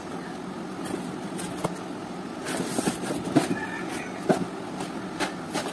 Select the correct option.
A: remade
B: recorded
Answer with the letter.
B